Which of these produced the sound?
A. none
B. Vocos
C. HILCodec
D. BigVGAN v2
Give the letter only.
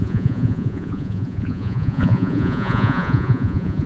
B